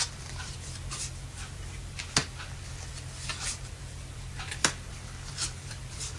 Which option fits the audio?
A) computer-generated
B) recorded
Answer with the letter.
A